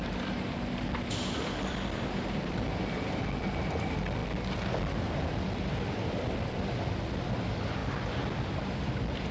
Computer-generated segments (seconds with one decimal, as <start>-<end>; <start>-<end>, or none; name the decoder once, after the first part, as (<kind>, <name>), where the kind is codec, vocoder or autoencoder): 0.0-4.2 (vocoder, BigVGAN v2); 4.8-9.3